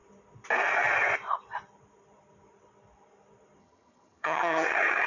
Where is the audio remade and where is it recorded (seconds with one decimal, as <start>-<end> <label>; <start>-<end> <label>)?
0.0-3.6 recorded; 3.6-5.1 remade